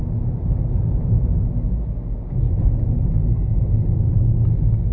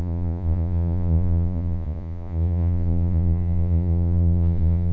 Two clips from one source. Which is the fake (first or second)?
second